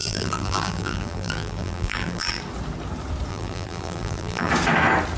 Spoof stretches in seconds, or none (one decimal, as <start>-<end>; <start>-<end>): 0.0-2.4; 3.3-4.5